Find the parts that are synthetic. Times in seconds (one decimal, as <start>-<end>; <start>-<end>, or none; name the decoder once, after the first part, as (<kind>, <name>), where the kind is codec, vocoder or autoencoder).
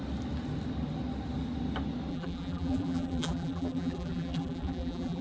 2.1-5.2 (vocoder, BigVGAN v2)